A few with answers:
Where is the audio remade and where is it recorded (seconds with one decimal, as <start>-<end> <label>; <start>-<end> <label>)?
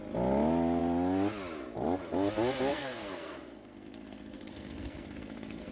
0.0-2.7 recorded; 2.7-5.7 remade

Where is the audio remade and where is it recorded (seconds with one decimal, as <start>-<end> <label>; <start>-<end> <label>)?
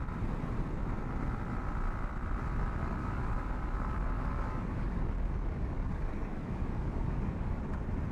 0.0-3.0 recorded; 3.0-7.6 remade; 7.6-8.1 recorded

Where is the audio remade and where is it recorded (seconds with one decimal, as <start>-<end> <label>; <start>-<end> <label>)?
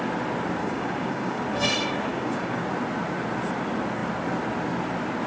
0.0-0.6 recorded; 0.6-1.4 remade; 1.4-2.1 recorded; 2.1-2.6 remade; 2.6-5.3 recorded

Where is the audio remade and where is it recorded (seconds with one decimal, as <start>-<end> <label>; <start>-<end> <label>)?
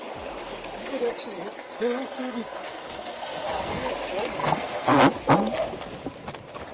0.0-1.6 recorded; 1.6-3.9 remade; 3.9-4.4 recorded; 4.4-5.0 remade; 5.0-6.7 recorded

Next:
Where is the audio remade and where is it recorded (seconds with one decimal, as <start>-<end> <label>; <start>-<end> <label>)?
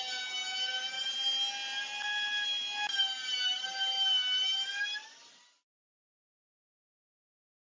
0.0-7.7 recorded